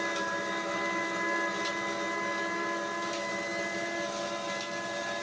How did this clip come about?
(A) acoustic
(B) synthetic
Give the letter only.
A